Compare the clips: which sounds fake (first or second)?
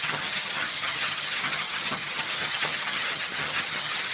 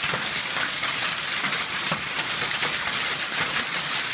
first